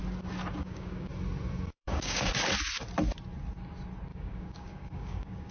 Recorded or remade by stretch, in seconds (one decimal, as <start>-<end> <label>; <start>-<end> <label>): 0.0-0.6 recorded; 0.6-1.1 remade; 1.1-1.7 recorded; 1.7-2.3 remade; 2.3-4.1 recorded; 4.1-5.5 remade